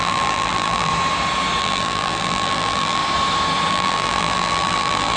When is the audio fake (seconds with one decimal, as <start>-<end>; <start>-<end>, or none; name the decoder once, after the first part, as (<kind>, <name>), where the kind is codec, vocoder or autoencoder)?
0.0-0.9 (vocoder, BigVGAN v2); 1.6-3.0; 3.7-5.2